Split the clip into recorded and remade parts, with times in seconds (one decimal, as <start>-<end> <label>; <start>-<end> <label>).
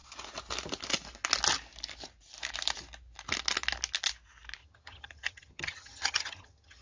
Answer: 0.0-4.6 recorded; 4.6-6.8 remade